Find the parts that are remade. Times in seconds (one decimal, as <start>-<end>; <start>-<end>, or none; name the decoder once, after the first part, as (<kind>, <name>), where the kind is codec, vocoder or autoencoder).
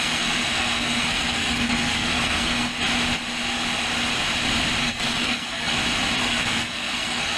0.0-2.7 (codec, SNAC); 4.8-5.7; 6.2-7.4